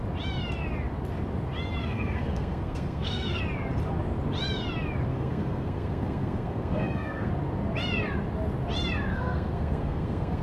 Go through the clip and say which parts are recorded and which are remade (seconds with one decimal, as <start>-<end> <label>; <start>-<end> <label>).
0.0-1.8 recorded; 1.8-3.4 remade; 3.4-5.1 recorded; 5.1-7.3 remade; 7.3-9.1 recorded; 9.1-10.4 remade